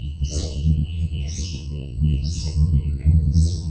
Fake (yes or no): yes